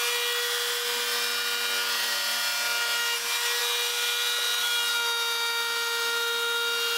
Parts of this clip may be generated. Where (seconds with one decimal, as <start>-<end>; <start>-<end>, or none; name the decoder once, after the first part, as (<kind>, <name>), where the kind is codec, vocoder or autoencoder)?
none